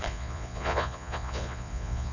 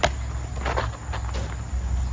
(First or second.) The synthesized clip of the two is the first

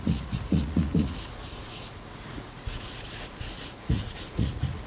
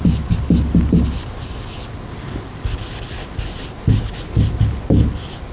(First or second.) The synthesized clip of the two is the first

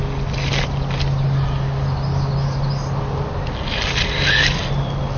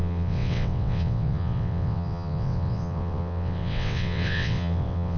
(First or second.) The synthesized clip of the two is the second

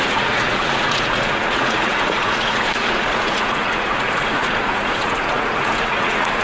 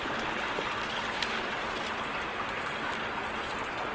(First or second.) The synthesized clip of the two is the first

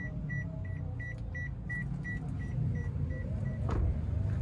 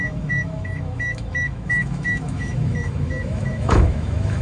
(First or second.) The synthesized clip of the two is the second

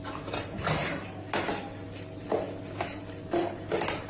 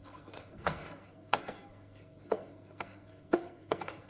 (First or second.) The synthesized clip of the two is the second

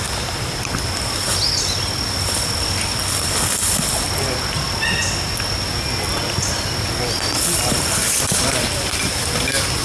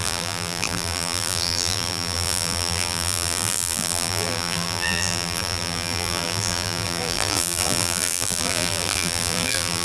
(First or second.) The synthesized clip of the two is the second